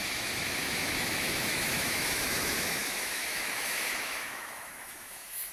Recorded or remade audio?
remade